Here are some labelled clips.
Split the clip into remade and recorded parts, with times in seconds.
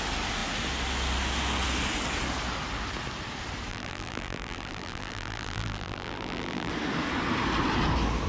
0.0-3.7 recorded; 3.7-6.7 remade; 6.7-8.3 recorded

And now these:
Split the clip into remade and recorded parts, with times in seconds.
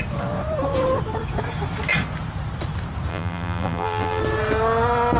0.0-3.1 recorded; 3.1-4.2 remade; 4.2-5.2 recorded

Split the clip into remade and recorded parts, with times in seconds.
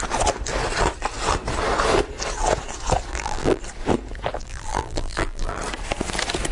0.0-3.1 recorded; 3.1-3.6 remade; 3.6-4.4 recorded; 4.4-5.6 remade; 5.6-6.5 recorded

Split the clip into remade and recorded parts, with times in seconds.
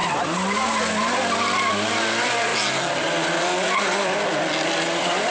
0.0-1.7 recorded; 1.7-2.5 remade; 2.5-3.4 recorded; 3.4-5.3 remade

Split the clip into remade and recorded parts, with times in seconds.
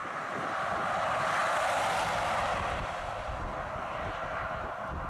0.0-0.7 remade; 0.7-5.1 recorded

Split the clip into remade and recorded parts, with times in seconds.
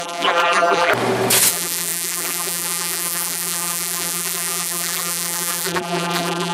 0.0-0.9 remade; 0.9-1.5 recorded; 1.5-6.5 remade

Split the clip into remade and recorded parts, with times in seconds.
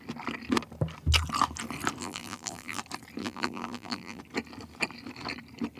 0.0-2.0 recorded; 2.0-2.8 remade; 2.8-3.2 recorded; 3.2-4.2 remade; 4.2-5.8 recorded